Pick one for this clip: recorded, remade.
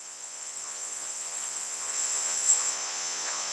remade